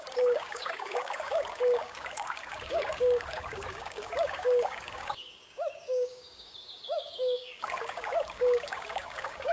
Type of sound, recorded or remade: remade